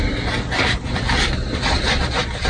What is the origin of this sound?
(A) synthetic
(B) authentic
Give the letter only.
B